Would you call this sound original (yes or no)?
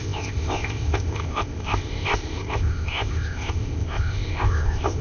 no